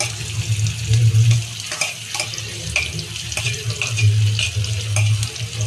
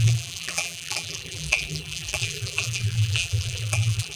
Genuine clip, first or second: first